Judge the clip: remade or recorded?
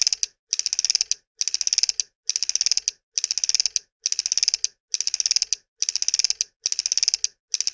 recorded